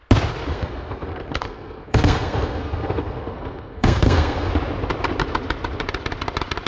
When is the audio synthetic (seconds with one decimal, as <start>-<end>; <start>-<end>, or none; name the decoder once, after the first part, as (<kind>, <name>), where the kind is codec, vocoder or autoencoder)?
0.5-4.5 (codec, SNAC)